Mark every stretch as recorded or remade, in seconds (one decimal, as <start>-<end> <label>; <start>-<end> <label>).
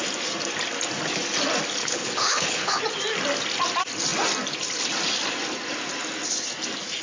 0.0-1.8 recorded; 1.8-2.8 remade; 2.8-7.0 recorded